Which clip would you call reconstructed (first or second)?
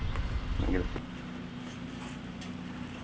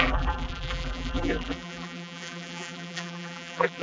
second